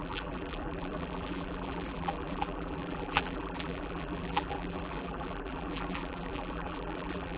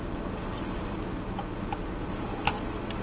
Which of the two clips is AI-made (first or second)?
first